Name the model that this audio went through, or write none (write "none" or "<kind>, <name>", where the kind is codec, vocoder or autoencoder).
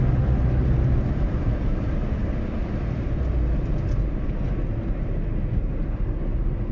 none